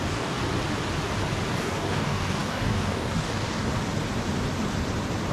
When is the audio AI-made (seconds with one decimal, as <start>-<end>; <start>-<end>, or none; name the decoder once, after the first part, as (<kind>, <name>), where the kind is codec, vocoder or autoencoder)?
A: 0.0-0.4 (codec, DAC); 1.5-3.7